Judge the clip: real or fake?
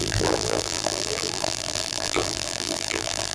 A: fake